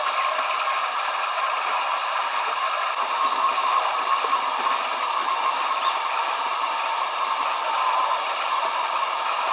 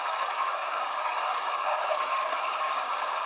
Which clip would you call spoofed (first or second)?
second